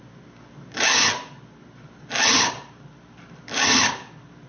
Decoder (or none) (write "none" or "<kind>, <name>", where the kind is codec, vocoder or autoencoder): none